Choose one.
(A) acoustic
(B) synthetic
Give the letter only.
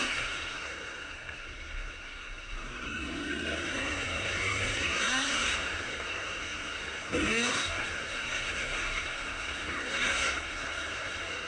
B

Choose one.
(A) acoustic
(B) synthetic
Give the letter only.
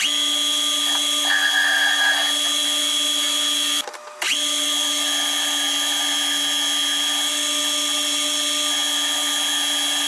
A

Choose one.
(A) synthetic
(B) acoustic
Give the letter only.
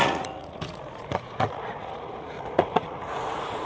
A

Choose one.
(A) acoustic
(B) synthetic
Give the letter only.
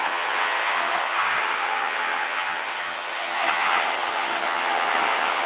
B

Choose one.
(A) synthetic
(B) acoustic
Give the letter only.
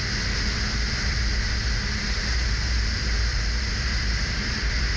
B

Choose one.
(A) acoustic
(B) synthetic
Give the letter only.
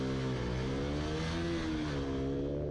A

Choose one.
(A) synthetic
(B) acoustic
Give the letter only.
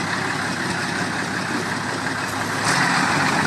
B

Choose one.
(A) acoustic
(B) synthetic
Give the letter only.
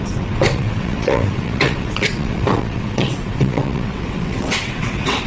B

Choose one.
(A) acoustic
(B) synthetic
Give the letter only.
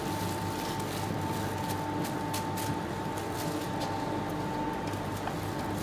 A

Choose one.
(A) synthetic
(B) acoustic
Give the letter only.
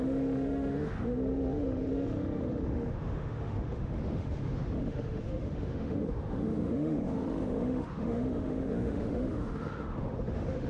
A